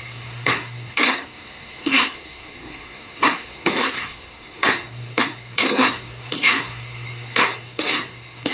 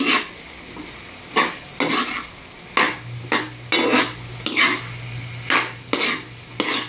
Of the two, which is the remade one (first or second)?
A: first